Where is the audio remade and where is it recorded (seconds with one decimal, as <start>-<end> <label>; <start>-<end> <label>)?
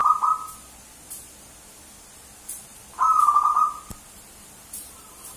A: 0.0-5.4 recorded